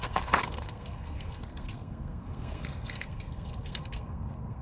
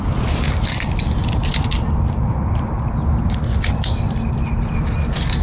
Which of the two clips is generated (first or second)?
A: first